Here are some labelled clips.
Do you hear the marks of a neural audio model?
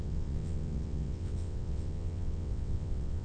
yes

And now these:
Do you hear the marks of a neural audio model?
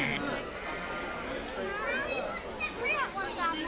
no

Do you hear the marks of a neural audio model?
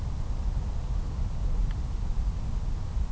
no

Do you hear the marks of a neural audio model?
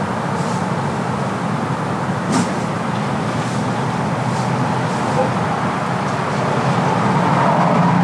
no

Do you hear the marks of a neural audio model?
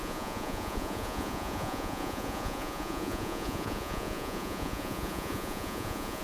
yes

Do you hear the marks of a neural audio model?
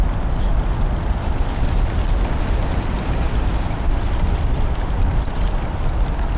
no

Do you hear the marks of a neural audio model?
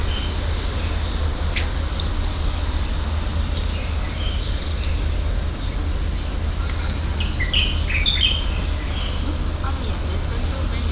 no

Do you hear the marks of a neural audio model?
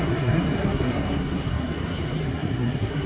yes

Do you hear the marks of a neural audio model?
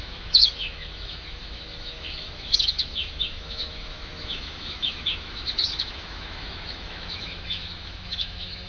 yes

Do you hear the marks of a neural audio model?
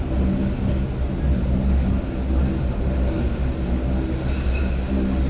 no